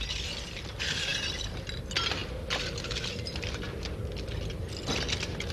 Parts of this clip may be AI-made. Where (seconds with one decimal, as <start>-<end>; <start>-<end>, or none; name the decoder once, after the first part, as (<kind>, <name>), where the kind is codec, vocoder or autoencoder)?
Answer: none